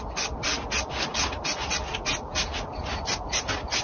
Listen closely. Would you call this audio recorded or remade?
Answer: recorded